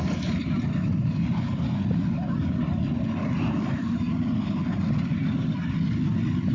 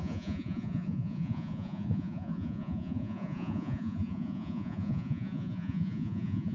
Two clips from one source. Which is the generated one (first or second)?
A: second